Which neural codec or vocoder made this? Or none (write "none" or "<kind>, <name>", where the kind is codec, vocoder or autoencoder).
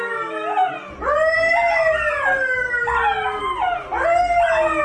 none